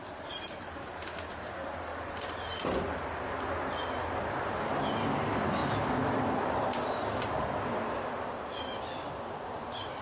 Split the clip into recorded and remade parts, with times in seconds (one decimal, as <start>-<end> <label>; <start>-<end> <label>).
0.0-10.0 recorded